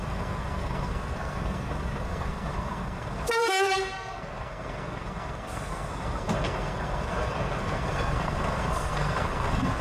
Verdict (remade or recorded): remade